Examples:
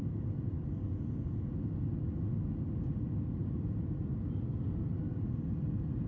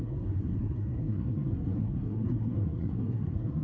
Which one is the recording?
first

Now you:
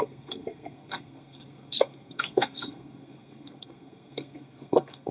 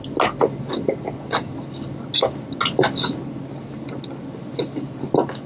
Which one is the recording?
second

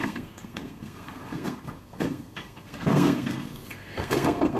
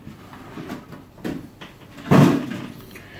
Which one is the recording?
second